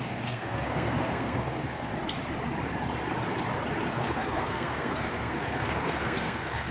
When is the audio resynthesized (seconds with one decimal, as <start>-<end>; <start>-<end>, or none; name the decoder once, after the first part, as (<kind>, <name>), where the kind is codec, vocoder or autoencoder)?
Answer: 0.0-1.9 (codec, SNAC); 3.9-6.7